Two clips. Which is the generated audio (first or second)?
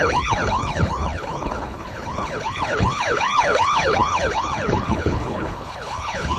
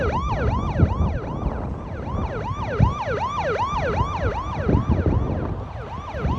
first